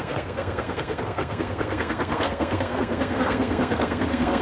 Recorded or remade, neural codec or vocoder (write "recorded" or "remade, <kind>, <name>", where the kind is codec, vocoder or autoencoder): remade, codec, SNAC